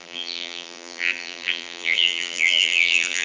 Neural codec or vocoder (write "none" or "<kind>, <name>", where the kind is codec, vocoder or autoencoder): vocoder, BigVGAN v2